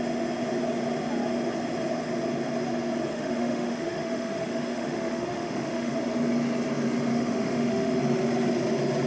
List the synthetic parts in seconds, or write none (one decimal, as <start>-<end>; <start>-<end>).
3.1-5.9; 7.1-8.0

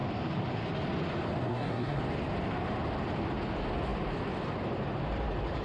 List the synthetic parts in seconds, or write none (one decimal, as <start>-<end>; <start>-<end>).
1.5-2.0

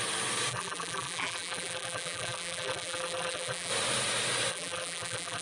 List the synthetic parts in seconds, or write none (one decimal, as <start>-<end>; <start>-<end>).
0.5-3.7; 4.5-5.4

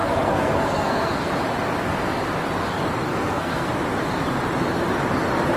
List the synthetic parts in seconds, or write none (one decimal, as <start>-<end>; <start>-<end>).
0.0-1.3; 3.1-3.7